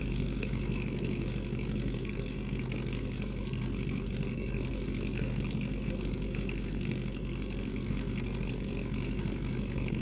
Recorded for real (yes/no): no